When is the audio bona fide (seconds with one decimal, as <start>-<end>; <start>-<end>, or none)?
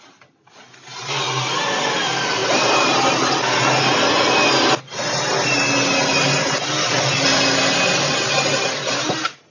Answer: 0.0-2.4; 3.1-9.5